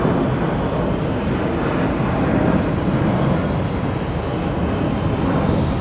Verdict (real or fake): real